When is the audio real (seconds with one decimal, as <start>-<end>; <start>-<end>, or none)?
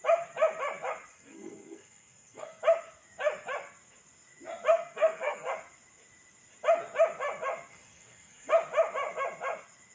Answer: 0.0-1.1; 2.6-4.7; 5.5-7.7; 8.5-9.9